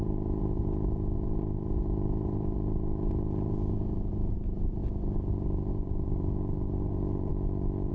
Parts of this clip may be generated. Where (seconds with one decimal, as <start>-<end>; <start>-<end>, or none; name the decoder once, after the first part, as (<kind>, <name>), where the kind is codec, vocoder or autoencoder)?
0.0-4.8 (vocoder, BigVGAN v2); 5.3-7.3